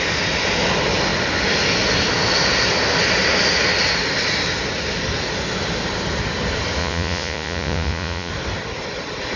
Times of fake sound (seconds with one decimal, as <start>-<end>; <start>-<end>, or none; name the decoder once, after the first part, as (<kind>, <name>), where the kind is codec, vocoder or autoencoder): 6.8-8.3 (vocoder, Vocos)